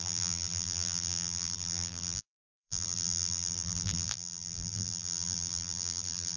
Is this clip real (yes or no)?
no